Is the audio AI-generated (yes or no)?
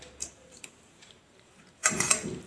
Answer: yes